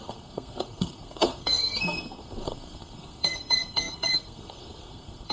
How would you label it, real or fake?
fake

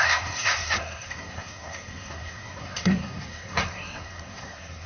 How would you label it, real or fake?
fake